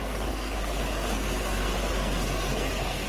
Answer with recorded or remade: remade